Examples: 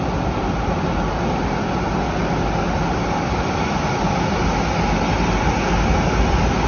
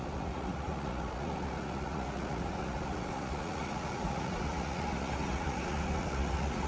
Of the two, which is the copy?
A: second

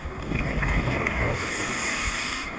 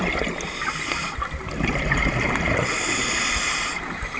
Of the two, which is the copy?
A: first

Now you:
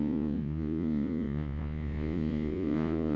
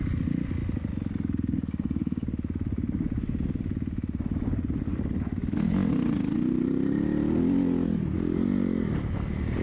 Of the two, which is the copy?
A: first